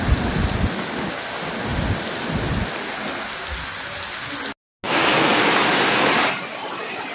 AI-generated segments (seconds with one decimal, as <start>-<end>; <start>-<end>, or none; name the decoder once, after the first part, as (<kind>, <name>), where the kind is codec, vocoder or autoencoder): none